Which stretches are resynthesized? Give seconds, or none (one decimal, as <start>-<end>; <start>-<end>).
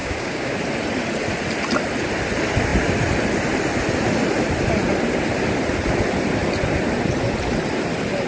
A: 0.0-0.6